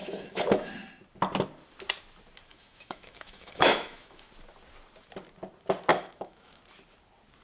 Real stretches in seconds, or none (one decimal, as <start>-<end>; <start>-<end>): 0.7-2.5; 4.3-5.9; 6.6-7.4